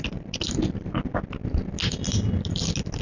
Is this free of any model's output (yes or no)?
yes